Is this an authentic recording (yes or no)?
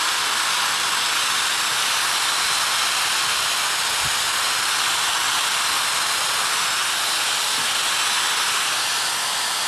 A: yes